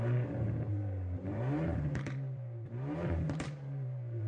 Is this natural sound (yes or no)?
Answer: no